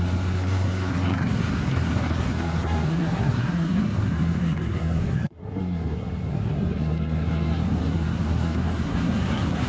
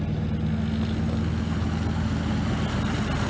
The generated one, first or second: first